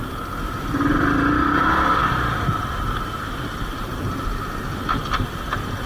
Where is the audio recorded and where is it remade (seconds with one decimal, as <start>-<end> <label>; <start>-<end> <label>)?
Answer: 0.0-5.9 remade